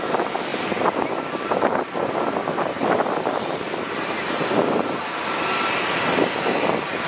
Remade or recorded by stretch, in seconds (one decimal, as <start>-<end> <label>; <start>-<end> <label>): 0.0-7.1 recorded

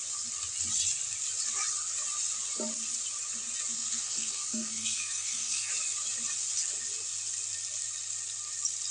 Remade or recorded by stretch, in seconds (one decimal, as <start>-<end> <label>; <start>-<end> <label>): 0.0-3.7 recorded; 3.7-5.7 remade; 5.7-8.9 recorded

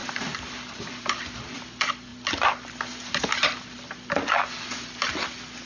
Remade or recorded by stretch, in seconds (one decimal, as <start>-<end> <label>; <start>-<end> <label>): 0.0-5.7 recorded

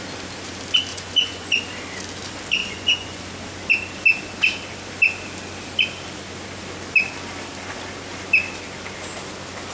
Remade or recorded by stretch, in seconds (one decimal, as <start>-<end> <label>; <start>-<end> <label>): 0.0-0.9 recorded; 0.9-1.6 remade; 1.6-2.6 recorded; 2.6-3.2 remade; 3.2-9.7 recorded

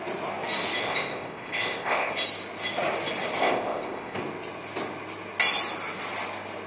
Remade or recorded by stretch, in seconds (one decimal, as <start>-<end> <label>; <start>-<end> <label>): 0.0-0.8 recorded; 0.8-2.1 remade; 2.1-3.4 recorded; 3.4-4.2 remade; 4.2-6.7 recorded

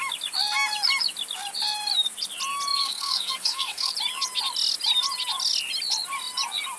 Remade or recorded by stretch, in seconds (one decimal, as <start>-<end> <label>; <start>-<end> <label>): 0.0-2.8 recorded; 2.8-3.9 remade; 3.9-6.8 recorded